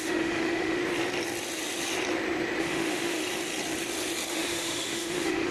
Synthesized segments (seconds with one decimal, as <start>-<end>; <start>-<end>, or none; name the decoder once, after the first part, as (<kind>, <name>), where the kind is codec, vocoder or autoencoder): 0.0-0.8 (autoencoder, DAC-VAE); 2.6-3.2; 4.3-5.5